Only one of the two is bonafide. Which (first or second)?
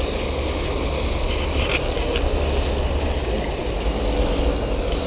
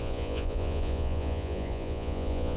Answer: first